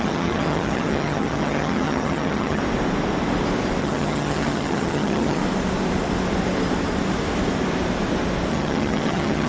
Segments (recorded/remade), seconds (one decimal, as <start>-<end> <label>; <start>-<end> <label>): 0.0-2.6 remade; 2.6-3.8 recorded; 3.8-5.4 remade; 5.4-8.5 recorded; 8.5-9.5 remade

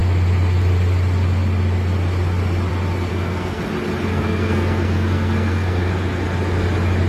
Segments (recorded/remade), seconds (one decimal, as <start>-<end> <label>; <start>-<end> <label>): 0.0-3.1 recorded; 3.1-3.6 remade; 3.6-4.1 recorded; 4.1-5.9 remade; 5.9-7.1 recorded

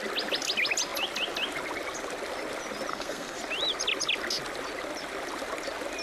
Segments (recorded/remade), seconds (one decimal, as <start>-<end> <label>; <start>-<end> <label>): 0.0-2.9 recorded; 2.9-3.4 remade; 3.4-6.0 recorded

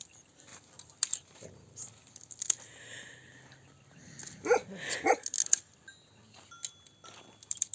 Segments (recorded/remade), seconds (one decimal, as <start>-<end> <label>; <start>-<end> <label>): 0.0-7.7 recorded

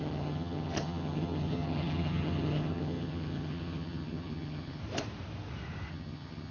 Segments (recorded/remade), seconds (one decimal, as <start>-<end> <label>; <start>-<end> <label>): 0.0-4.8 remade; 4.8-5.9 recorded; 5.9-6.5 remade

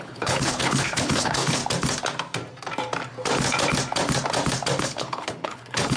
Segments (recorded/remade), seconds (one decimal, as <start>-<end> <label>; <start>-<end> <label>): 0.0-1.6 remade; 1.6-4.8 recorded; 4.8-6.0 remade

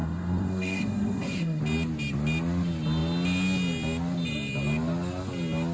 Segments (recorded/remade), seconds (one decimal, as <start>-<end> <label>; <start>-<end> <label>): 0.0-1.6 remade; 1.6-5.7 recorded